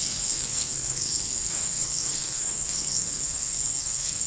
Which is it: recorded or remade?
remade